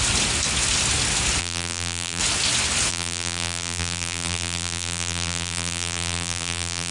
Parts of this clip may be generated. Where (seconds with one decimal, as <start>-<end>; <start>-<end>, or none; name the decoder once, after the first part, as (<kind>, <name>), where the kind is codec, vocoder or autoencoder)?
1.4-2.2 (vocoder, BigVGAN v2); 2.9-6.9

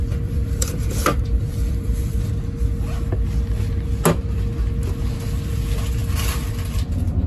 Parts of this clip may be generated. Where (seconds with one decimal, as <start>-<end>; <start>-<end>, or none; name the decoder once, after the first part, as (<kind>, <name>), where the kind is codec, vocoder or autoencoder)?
0.0-2.3 (vocoder, BigVGAN v2); 6.0-6.5

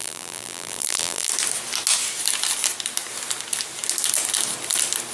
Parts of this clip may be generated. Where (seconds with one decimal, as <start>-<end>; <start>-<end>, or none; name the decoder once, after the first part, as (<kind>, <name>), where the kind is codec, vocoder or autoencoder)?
0.0-1.3 (vocoder, BigVGAN v2)

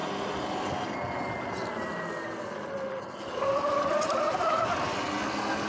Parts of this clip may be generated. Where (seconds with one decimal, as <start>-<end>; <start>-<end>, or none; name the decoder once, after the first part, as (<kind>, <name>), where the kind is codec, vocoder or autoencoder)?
none

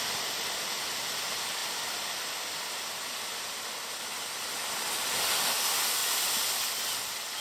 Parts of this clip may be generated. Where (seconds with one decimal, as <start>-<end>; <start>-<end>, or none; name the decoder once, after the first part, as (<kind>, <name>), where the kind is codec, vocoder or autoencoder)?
none

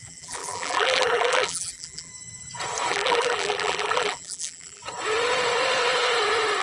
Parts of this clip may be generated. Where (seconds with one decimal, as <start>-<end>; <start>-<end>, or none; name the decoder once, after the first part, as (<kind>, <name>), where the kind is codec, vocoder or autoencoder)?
0.0-2.1 (vocoder, BigVGAN v2); 2.9-4.8